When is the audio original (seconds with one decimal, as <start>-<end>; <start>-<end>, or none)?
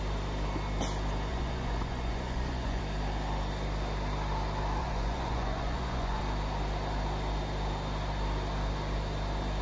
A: 0.0-1.3; 2.8-4.8; 6.2-9.6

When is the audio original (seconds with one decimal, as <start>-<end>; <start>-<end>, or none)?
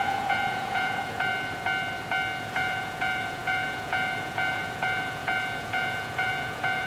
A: 1.3-2.4